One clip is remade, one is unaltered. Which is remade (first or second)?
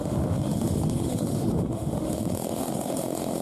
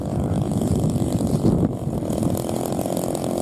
first